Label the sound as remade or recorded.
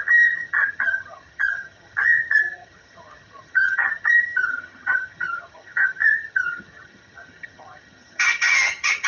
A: remade